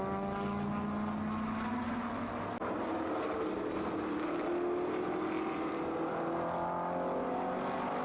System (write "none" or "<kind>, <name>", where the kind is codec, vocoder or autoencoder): none